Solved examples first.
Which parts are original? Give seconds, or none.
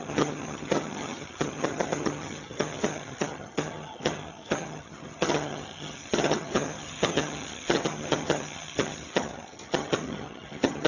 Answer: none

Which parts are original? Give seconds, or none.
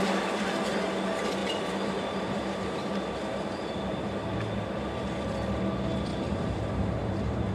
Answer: 0.0-1.4; 4.4-6.1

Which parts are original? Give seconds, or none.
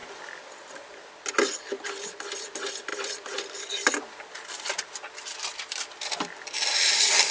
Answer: 1.1-7.3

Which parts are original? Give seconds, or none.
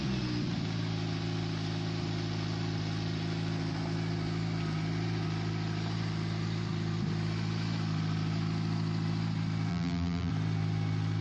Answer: 0.0-9.7; 10.3-11.2